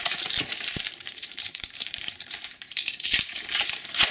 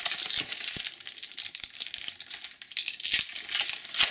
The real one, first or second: second